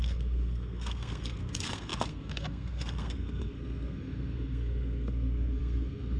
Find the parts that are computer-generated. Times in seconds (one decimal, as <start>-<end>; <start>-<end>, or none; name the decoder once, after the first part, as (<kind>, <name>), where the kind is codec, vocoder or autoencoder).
0.0-6.2 (codec, SNAC)